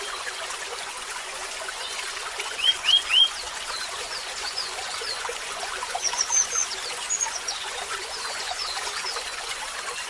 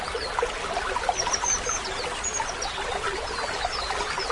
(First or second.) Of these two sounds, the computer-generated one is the first